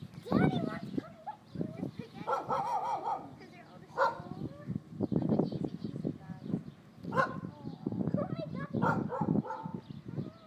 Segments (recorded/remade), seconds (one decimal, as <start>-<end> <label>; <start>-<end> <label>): 0.0-1.4 recorded; 1.4-2.6 remade; 2.6-10.5 recorded